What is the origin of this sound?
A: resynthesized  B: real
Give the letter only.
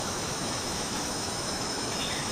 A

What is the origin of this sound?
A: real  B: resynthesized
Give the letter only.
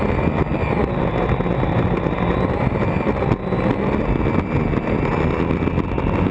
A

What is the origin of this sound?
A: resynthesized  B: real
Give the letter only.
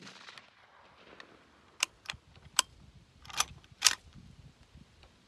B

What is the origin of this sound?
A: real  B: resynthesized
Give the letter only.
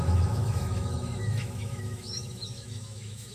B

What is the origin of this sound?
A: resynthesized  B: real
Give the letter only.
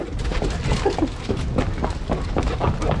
B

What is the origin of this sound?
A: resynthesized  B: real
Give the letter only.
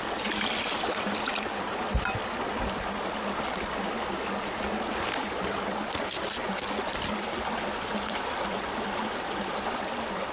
B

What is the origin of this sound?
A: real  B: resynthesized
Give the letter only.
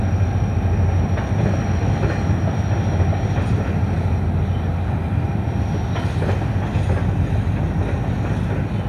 A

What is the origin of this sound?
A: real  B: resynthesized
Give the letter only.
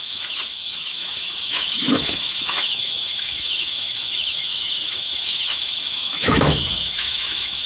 B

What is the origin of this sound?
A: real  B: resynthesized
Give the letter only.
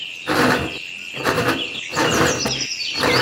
A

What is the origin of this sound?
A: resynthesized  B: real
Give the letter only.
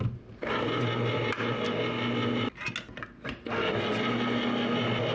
B